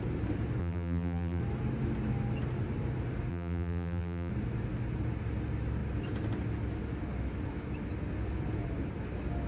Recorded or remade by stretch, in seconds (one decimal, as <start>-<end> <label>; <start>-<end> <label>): 0.0-0.6 recorded; 0.6-1.4 remade; 1.4-3.3 recorded; 3.3-4.3 remade; 4.3-9.5 recorded